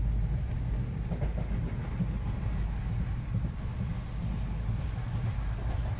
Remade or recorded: recorded